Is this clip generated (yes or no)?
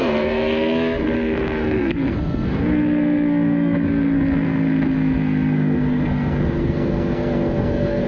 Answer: yes